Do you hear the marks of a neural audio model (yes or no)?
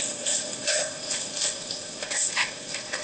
yes